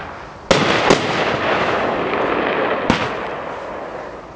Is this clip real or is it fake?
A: real